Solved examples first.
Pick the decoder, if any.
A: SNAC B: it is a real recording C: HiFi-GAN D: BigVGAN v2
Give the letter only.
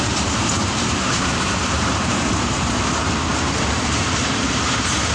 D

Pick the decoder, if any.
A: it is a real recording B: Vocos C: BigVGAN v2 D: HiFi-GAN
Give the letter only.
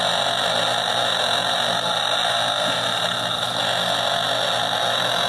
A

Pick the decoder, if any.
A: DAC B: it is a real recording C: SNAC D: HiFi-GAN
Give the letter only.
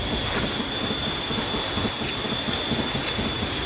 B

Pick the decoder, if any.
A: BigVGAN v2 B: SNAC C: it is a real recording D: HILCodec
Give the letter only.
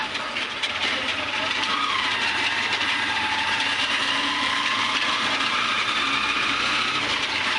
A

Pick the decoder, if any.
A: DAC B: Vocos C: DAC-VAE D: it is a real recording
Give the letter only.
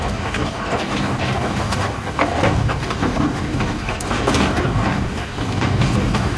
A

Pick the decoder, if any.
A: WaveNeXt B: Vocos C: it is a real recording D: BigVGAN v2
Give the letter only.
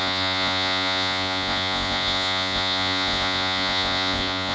B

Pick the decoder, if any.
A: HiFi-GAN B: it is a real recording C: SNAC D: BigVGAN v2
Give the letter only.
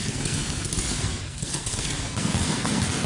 C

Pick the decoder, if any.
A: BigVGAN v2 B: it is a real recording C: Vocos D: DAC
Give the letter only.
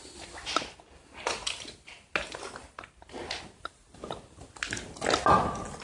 B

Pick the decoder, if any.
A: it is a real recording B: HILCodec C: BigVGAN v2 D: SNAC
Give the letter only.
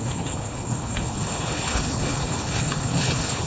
B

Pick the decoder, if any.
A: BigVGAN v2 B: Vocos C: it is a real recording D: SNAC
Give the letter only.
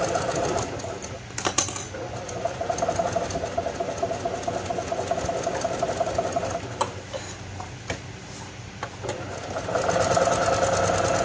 C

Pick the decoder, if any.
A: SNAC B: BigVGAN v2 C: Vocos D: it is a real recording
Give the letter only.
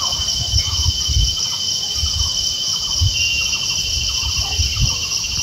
D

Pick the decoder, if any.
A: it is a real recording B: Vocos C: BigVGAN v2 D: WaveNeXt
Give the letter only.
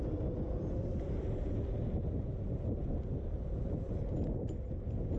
A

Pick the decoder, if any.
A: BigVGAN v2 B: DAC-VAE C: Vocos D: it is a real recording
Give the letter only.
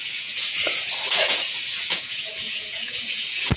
C